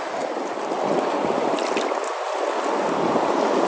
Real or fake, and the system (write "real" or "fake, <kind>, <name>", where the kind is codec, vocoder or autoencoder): real